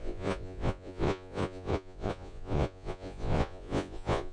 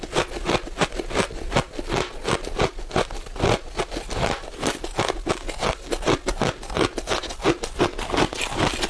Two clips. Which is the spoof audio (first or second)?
first